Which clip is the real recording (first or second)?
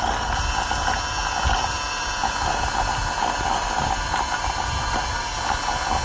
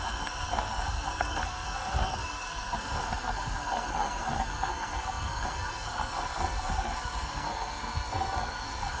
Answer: first